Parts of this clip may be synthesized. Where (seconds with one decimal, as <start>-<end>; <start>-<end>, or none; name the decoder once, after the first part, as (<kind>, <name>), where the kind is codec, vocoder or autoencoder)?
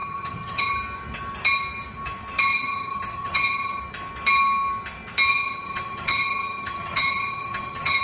0.0-0.7 (vocoder, HiFi-GAN); 2.5-3.8; 5.3-8.0